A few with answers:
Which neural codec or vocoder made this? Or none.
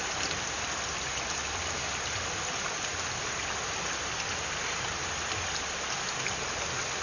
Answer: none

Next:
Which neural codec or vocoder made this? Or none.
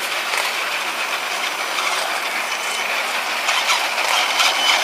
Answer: none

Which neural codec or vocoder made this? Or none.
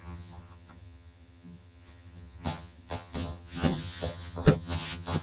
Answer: vocoder, HiFi-GAN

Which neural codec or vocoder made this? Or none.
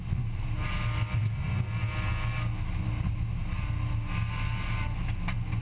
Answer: none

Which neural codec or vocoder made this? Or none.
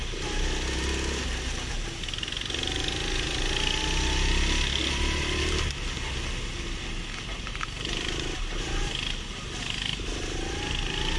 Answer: none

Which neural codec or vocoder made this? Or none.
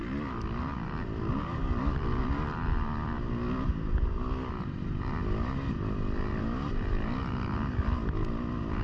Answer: none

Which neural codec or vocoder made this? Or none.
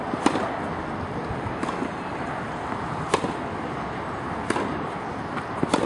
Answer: none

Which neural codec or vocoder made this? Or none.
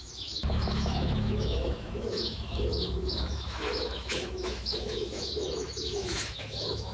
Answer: autoencoder, DAC-VAE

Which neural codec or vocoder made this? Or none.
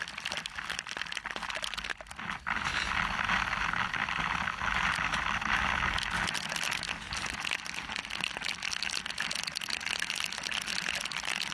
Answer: none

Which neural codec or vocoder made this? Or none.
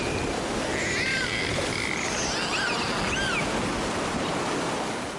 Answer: none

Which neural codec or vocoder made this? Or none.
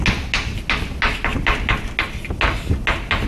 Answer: none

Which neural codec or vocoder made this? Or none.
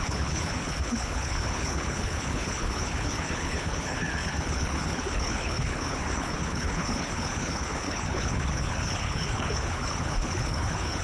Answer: codec, HILCodec